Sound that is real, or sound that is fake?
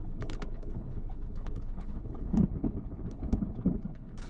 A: fake